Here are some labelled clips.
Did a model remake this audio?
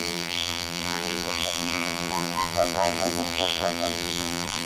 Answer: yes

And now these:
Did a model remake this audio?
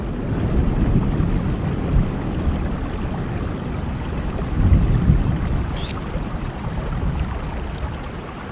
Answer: no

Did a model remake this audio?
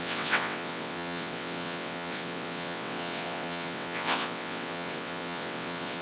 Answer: yes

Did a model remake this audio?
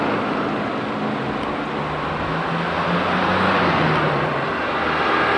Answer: no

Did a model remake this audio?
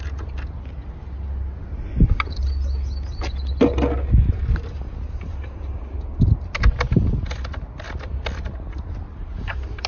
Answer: no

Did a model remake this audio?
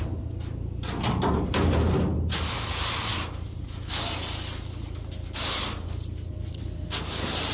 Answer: no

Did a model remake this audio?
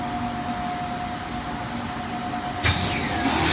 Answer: no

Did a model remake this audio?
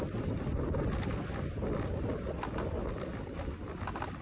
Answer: no